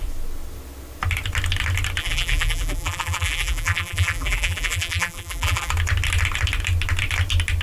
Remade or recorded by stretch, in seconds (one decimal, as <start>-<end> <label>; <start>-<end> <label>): 0.0-2.0 recorded; 2.0-5.7 remade; 5.7-7.6 recorded